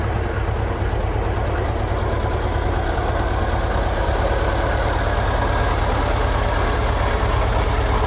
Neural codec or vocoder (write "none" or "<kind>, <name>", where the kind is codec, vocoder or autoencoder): none